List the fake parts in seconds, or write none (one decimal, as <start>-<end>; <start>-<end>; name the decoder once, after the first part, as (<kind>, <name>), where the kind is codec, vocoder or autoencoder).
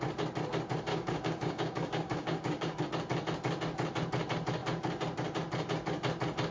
0.9-2.8 (codec, DAC)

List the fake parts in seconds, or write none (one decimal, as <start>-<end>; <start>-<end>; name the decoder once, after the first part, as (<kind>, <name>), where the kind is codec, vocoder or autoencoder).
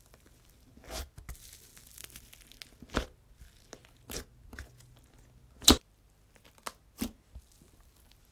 none